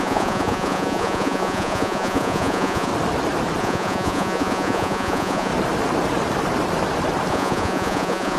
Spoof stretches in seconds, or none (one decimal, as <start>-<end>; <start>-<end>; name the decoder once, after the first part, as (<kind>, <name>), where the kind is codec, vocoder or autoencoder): 0.0-2.9 (vocoder, Vocos); 3.6-5.5; 7.3-8.4